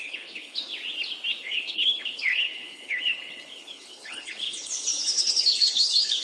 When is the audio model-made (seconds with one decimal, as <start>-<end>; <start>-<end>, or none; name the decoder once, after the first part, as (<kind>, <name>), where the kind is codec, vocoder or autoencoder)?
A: 0.0-0.7 (codec, HILCodec); 1.4-6.2